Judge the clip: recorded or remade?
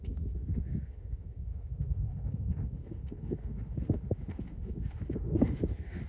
remade